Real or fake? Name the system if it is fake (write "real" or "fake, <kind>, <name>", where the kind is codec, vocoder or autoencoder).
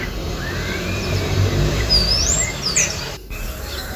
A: fake, vocoder, BigVGAN v2